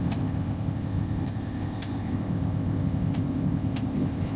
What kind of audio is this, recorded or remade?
remade